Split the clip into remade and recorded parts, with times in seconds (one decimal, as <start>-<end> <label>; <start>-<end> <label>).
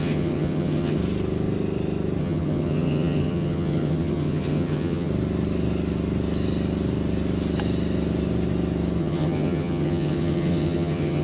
0.0-1.0 remade; 1.0-2.2 recorded; 2.2-5.1 remade; 5.1-9.0 recorded; 9.0-11.2 remade